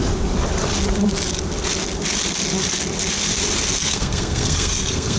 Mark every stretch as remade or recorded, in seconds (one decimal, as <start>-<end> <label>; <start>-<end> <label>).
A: 0.0-3.8 recorded; 3.8-5.2 remade